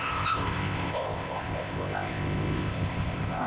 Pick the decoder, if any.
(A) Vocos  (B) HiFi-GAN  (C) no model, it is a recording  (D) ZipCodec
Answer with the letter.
D